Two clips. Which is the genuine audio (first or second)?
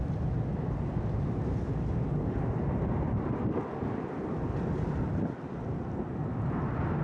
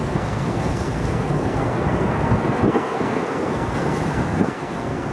first